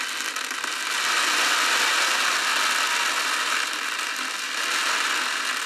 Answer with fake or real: real